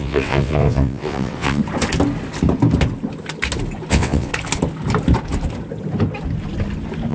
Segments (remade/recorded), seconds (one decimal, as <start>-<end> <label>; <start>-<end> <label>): 0.0-1.6 remade; 1.6-3.9 recorded; 3.9-4.3 remade; 4.3-7.1 recorded